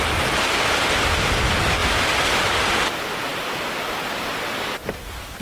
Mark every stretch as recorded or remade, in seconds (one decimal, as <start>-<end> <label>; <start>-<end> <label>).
0.0-5.4 recorded